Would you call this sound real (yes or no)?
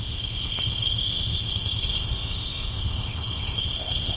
no